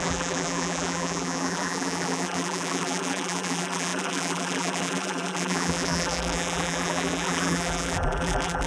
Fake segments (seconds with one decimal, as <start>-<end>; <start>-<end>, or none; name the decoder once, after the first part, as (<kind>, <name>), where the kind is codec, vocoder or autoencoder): 0.0-8.7 (vocoder, BigVGAN v2)